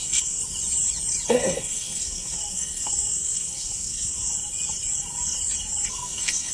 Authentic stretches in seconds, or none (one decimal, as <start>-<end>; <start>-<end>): 0.4-1.3; 4.3-5.9